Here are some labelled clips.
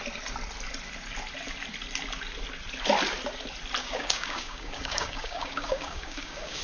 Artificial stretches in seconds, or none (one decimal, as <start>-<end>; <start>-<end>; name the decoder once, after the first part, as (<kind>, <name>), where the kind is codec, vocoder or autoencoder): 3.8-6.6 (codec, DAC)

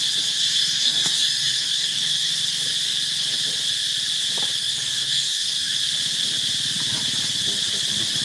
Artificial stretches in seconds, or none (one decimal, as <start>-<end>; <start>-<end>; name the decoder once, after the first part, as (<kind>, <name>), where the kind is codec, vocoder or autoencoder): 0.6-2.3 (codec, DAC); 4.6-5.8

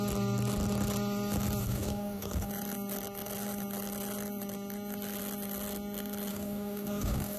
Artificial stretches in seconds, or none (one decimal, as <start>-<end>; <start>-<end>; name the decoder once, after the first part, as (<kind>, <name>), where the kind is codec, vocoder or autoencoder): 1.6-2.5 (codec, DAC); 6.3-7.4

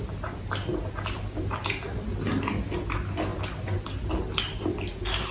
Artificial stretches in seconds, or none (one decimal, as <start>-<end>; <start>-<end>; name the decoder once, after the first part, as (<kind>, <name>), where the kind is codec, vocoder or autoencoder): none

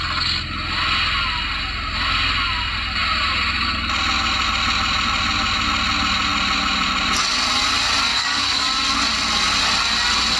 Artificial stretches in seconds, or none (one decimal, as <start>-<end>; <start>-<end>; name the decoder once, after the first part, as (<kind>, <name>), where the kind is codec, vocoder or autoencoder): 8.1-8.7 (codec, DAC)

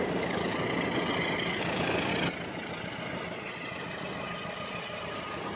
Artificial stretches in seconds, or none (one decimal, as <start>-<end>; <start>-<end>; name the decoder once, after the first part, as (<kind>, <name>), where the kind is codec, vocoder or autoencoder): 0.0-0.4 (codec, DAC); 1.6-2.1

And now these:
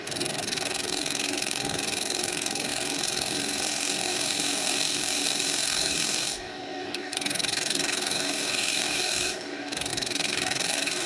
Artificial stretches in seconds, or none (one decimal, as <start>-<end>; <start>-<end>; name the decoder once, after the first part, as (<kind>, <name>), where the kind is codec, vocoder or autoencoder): 0.0-11.1 (codec, DAC)